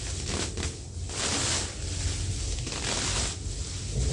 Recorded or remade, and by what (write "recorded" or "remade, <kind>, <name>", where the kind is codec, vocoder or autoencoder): recorded